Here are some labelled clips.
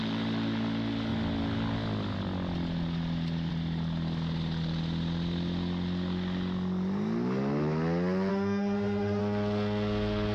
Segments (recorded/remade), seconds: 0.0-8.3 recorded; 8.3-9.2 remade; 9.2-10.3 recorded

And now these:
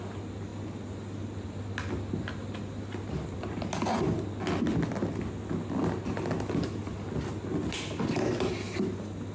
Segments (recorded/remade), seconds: 0.0-9.3 recorded

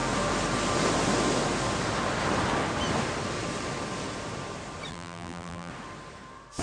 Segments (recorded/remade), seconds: 0.0-4.9 recorded; 4.9-5.7 remade; 5.7-6.6 recorded